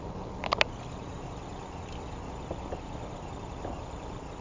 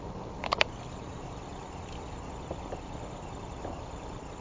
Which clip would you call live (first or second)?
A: first